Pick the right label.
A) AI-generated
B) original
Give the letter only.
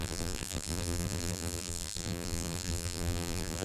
A